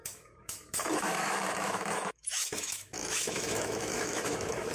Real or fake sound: fake